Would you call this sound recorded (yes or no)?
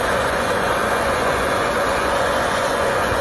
no